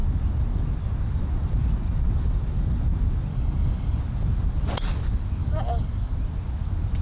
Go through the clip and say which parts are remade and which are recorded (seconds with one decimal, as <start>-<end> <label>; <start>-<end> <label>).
0.0-3.3 recorded; 3.3-4.0 remade; 4.0-5.4 recorded; 5.4-6.1 remade; 6.1-7.0 recorded